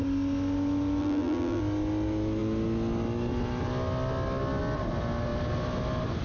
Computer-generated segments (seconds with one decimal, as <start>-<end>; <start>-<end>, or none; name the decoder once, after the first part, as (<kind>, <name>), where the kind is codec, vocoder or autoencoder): 1.0-1.6 (vocoder, BigVGAN v2)